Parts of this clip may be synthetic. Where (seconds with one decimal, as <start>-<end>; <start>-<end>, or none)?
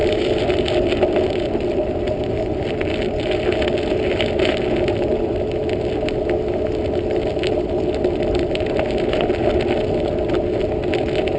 none